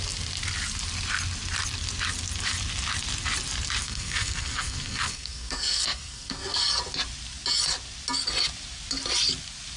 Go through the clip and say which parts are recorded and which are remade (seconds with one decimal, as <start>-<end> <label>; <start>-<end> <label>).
0.0-3.8 recorded; 3.8-6.6 remade; 6.6-9.8 recorded